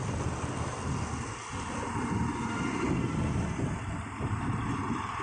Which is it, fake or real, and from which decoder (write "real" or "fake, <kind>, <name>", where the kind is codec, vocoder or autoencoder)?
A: real